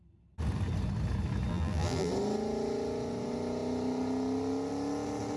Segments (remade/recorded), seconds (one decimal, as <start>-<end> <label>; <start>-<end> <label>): 0.0-1.5 recorded; 1.5-2.1 remade; 2.1-5.4 recorded

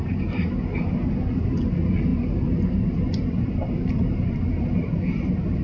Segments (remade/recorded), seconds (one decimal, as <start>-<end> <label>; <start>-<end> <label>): 0.0-5.6 recorded